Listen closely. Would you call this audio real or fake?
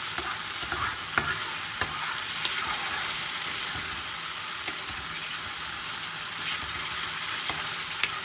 real